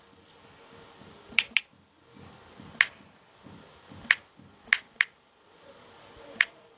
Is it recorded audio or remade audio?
recorded